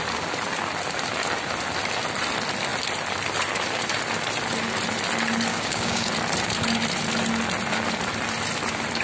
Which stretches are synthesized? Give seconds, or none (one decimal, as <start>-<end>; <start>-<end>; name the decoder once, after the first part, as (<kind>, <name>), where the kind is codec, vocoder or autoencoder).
5.5-6.1 (codec, DAC)